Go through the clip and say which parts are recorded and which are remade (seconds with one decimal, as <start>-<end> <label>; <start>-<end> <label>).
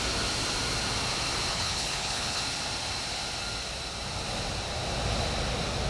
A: 0.0-1.5 recorded; 1.5-2.4 remade; 2.4-5.9 recorded